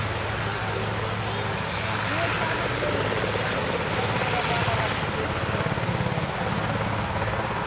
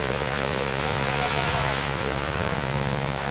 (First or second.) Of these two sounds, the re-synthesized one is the second